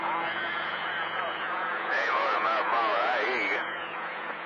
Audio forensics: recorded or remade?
remade